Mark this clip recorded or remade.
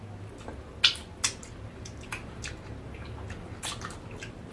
recorded